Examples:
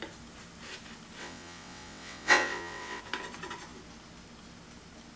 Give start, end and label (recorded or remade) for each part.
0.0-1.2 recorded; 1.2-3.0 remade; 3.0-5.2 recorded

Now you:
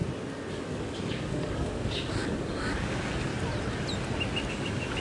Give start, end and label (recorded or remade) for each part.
0.0-0.5 recorded; 0.5-3.3 remade; 3.3-4.5 recorded; 4.5-5.0 remade

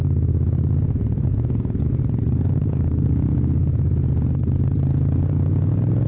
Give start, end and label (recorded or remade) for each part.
0.0-2.6 recorded; 2.6-3.3 remade; 3.3-6.1 recorded

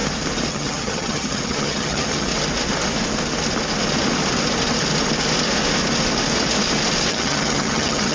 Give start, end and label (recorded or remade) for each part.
0.0-0.5 recorded; 0.5-2.3 remade; 2.3-7.1 recorded; 7.1-8.1 remade

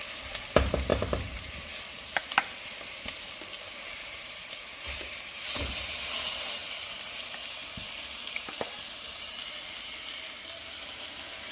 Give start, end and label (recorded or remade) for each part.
0.0-0.9 recorded; 0.9-1.8 remade; 1.8-3.5 recorded; 3.5-5.6 remade; 5.6-11.5 recorded

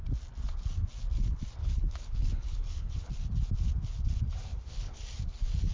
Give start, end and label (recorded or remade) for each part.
0.0-1.6 recorded; 1.6-3.1 remade; 3.1-4.5 recorded; 4.5-5.0 remade; 5.0-5.7 recorded

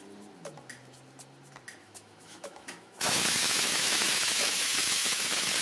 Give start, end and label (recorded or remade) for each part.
0.0-1.8 recorded; 1.8-5.6 remade